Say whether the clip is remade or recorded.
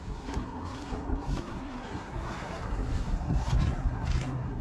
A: remade